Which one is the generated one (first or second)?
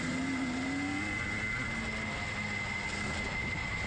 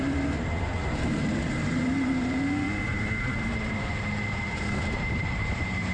second